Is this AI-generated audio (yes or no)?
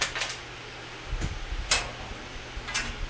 no